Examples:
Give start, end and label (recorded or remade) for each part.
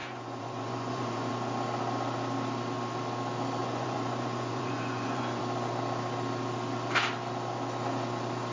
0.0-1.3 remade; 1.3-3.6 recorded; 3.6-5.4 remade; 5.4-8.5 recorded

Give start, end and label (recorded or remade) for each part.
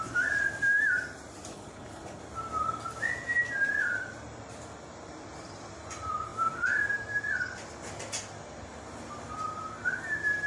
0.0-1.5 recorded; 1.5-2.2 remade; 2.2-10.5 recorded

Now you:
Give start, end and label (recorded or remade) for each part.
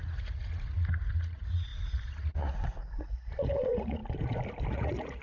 0.0-4.0 remade; 4.0-4.7 recorded; 4.7-5.2 remade